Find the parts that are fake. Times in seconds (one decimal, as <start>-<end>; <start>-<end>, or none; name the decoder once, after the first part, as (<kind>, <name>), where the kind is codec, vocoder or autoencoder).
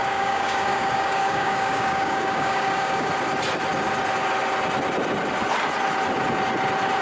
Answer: 0.0-3.1 (codec, DAC)